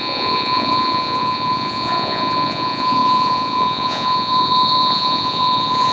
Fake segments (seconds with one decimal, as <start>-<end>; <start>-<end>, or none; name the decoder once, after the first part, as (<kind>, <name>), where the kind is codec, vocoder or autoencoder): 0.0-5.9 (vocoder, Vocos)